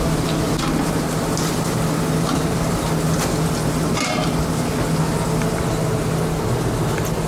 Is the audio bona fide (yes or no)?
yes